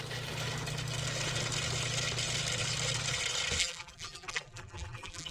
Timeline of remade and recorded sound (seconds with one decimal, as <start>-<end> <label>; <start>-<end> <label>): 0.0-3.6 recorded; 3.6-5.3 remade